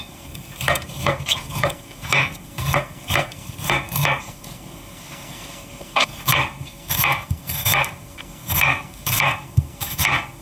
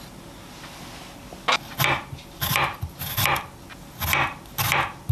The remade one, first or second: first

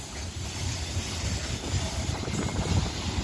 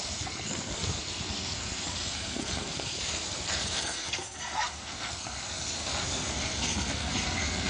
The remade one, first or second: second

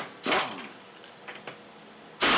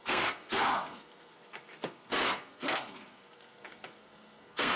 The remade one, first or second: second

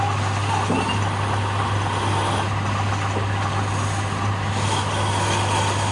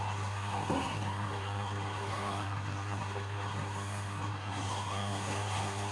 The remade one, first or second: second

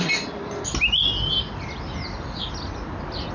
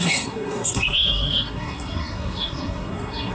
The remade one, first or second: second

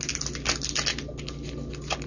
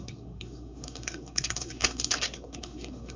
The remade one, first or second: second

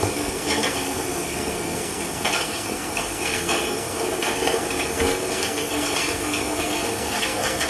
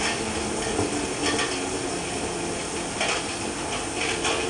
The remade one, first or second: first